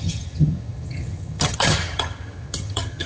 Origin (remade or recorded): remade